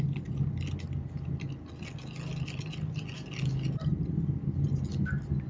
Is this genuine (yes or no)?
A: yes